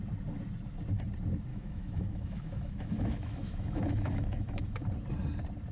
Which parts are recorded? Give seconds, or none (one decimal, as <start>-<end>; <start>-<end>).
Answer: 0.0-1.5; 4.8-5.7